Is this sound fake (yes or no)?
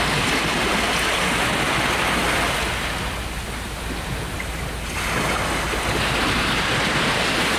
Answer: no